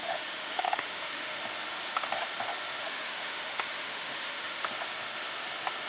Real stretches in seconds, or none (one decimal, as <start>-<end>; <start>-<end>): 1.4-2.8; 4.7-5.9